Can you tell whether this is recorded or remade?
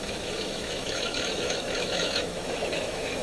remade